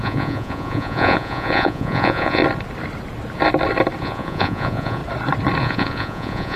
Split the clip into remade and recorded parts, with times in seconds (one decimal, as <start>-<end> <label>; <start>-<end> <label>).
0.0-2.4 remade; 2.4-4.0 recorded; 4.0-5.0 remade; 5.0-5.6 recorded; 5.6-6.6 remade